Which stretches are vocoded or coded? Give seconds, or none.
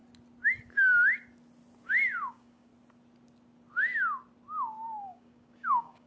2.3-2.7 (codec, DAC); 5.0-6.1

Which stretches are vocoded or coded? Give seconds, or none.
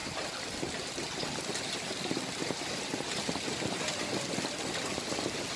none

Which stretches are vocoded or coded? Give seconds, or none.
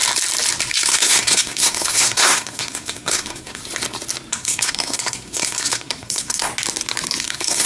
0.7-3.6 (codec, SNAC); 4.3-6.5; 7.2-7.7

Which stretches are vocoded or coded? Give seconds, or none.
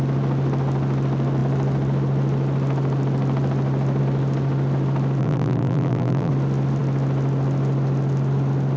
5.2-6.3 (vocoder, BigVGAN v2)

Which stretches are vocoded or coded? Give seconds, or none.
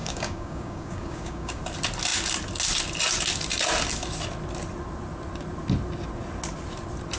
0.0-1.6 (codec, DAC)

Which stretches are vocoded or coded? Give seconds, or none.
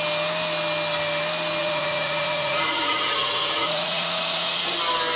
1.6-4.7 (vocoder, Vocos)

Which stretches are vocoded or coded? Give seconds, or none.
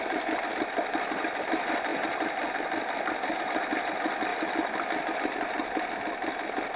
none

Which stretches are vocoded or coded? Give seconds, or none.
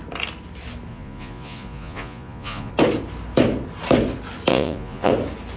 0.9-2.7 (vocoder, Vocos); 4.5-5.1